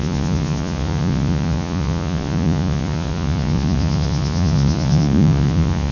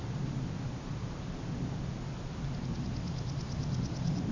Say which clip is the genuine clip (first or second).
second